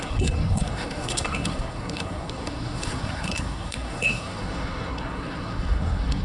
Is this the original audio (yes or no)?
no